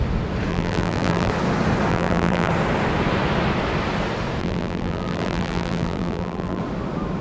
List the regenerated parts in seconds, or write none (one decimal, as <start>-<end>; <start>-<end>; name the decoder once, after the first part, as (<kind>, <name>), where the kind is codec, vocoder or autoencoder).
0.5-1.3 (vocoder, BigVGAN v2); 1.9-2.5; 4.4-6.6